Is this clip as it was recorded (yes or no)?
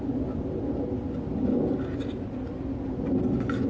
yes